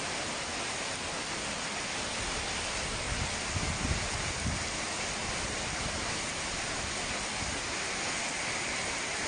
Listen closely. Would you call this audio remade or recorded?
recorded